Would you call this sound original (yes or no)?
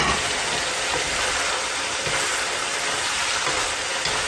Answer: yes